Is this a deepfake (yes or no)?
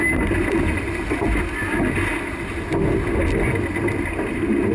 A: no